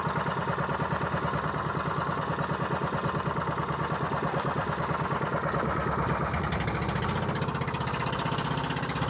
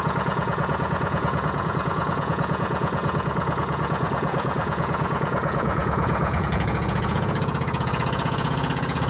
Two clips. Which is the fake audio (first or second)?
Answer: second